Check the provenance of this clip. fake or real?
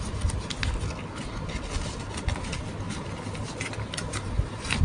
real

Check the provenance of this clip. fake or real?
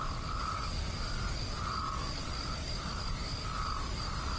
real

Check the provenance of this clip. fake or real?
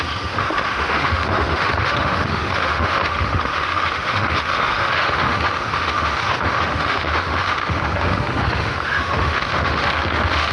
fake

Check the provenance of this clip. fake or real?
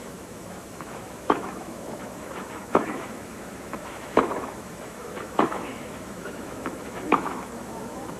fake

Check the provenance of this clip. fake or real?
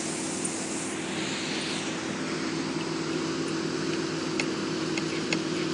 real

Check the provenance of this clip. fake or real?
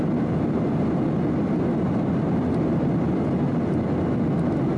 real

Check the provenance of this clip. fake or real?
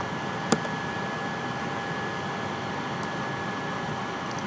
real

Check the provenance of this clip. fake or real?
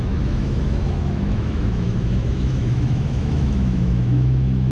fake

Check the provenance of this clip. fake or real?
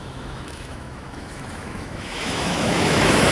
fake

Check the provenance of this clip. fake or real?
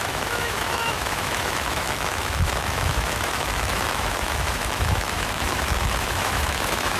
fake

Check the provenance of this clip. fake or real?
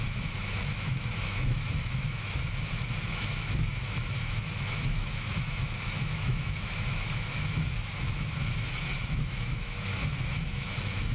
fake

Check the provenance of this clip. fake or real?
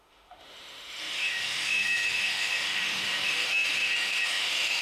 fake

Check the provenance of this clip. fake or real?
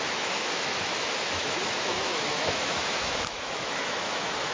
fake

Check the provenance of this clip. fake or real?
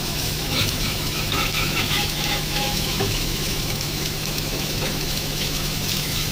fake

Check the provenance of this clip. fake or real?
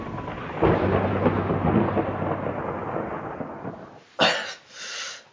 real